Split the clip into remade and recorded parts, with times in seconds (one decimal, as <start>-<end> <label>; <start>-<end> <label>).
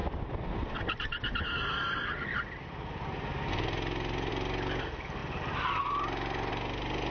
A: 0.0-7.1 recorded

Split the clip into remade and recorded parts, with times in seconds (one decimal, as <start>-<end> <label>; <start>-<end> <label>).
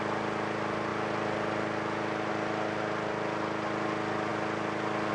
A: 0.0-5.1 recorded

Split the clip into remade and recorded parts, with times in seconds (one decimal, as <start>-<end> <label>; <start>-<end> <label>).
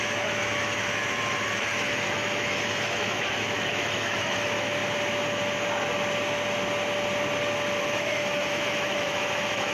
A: 0.0-4.8 remade; 4.8-7.8 recorded; 7.8-9.7 remade